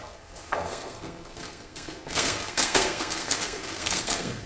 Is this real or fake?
fake